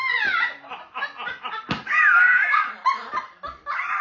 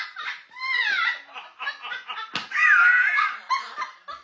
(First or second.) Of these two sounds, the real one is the second